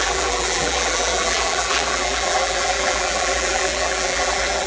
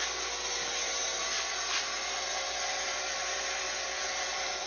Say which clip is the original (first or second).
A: second